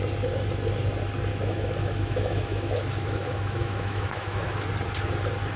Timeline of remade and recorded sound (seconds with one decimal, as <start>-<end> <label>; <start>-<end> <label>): 0.0-1.3 recorded; 1.3-4.7 remade; 4.7-5.6 recorded